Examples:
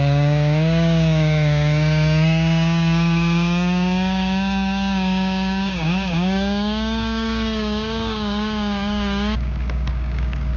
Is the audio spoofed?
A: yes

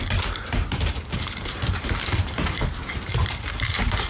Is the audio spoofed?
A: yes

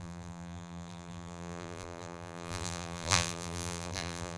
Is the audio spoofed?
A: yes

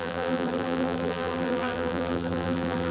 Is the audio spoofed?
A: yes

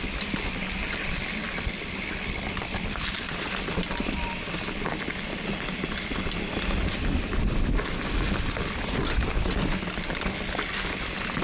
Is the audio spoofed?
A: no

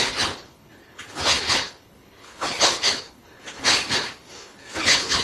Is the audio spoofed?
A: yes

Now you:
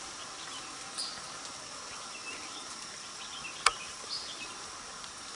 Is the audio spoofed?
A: no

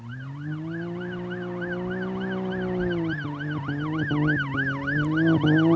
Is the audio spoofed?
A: no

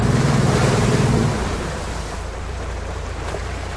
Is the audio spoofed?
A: yes